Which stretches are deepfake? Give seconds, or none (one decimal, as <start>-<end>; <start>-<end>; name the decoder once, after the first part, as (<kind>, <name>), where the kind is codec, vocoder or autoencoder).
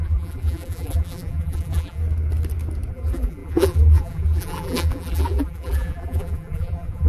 0.0-2.0 (vocoder, BigVGAN v2); 2.9-7.1